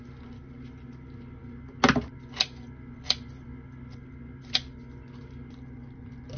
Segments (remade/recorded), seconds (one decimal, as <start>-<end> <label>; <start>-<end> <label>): 0.0-6.4 recorded

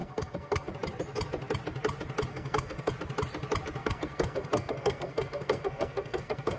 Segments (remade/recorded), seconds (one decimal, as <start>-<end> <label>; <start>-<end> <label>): 0.0-0.7 remade; 0.7-2.3 recorded; 2.3-2.9 remade; 2.9-3.8 recorded; 3.8-6.6 remade

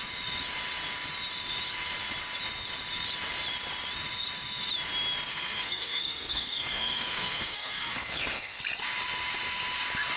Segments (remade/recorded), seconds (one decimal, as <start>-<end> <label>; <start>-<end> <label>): 0.0-5.3 recorded; 5.3-8.6 remade; 8.6-10.2 recorded

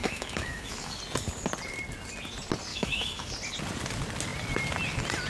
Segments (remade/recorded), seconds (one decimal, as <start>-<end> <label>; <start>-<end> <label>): 0.0-1.0 remade; 1.0-2.7 recorded; 2.7-3.3 remade; 3.3-5.3 recorded

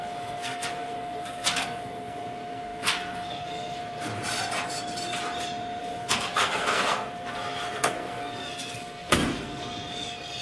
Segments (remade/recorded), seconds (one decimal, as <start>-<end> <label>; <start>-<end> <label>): 0.0-4.1 remade; 4.1-5.8 recorded; 5.8-10.4 remade

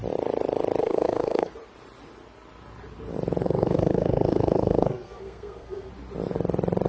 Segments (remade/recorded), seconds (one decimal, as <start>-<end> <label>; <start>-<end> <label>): 0.0-0.8 recorded; 0.8-1.5 remade; 1.5-3.4 recorded; 3.4-5.9 remade; 5.9-6.9 recorded

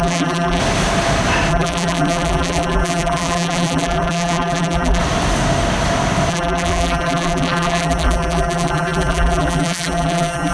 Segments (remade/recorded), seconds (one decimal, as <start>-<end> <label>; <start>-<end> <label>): 0.0-0.6 remade; 0.6-1.5 recorded; 1.5-5.0 remade; 5.0-6.3 recorded; 6.3-10.5 remade

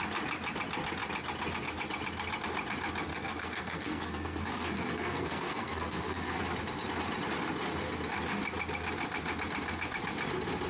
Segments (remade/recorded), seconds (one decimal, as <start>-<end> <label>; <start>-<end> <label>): 0.0-3.1 recorded; 3.1-6.4 remade; 6.4-10.7 recorded